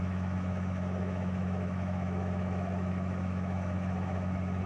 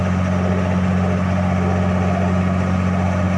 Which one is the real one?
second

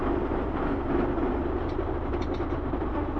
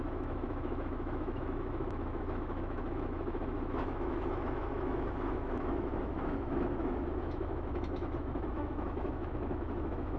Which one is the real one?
first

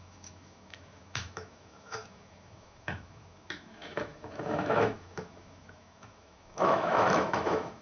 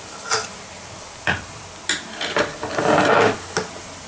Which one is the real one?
second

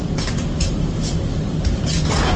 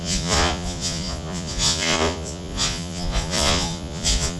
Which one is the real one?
first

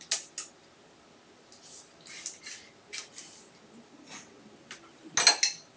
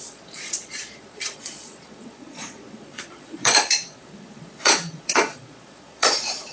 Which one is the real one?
first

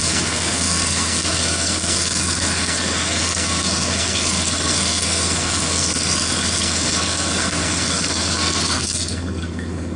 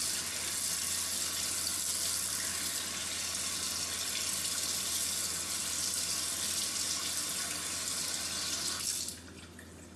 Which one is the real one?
second